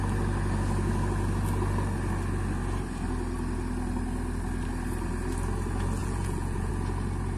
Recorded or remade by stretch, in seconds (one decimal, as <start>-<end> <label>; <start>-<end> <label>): 0.0-6.0 recorded; 6.0-6.7 remade; 6.7-7.4 recorded